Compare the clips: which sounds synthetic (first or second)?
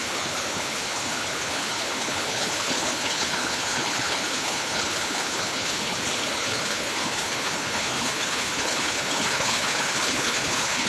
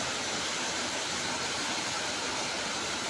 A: first